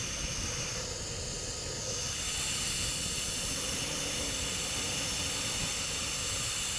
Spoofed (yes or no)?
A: no